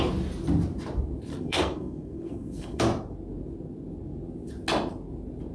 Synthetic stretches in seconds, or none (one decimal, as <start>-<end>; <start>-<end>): 1.3-2.8